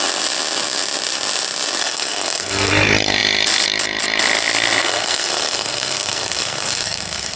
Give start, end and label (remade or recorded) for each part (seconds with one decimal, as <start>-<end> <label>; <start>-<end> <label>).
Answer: 0.0-1.8 recorded; 1.8-2.7 remade; 2.7-4.8 recorded; 4.8-7.4 remade